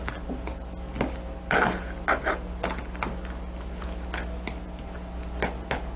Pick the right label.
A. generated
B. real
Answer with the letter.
B